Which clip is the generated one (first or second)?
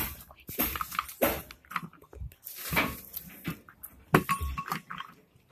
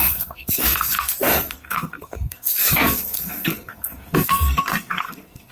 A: second